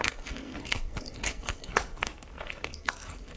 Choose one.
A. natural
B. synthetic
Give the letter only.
B